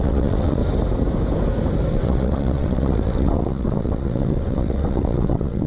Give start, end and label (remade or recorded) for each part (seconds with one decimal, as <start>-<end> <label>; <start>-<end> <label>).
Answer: 0.0-0.6 remade; 0.6-1.9 recorded; 1.9-5.7 remade